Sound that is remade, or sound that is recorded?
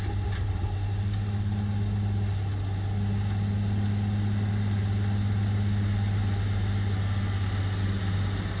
recorded